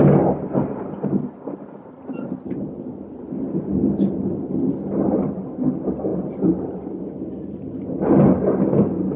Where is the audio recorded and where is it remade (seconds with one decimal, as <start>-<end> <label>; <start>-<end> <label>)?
0.0-9.2 recorded